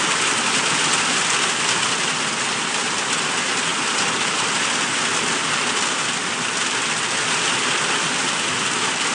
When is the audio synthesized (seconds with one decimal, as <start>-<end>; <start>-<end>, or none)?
none